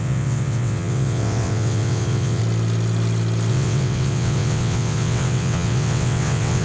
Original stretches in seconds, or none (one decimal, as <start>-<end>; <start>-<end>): 2.4-3.5